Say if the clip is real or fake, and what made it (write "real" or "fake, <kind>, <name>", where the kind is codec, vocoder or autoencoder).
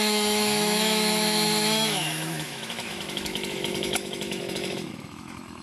fake, autoencoder, DAC-VAE